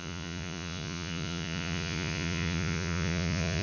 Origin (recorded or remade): remade